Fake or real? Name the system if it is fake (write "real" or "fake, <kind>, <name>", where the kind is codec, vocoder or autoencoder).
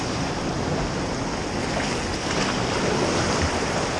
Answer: real